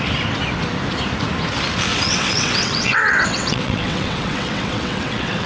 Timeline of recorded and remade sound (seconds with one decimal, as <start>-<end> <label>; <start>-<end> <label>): 0.0-1.9 recorded; 1.9-5.5 remade